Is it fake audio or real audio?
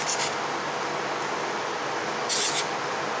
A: real